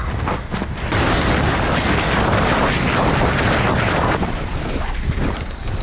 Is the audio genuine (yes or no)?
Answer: yes